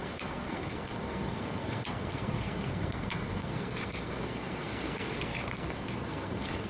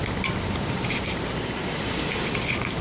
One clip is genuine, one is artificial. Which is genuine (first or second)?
second